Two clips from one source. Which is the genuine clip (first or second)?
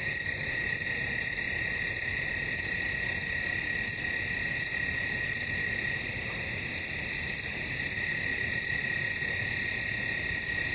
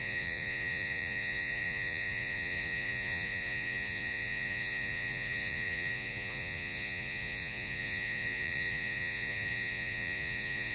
first